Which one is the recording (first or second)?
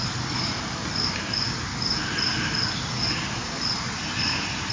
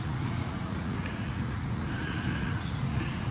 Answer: first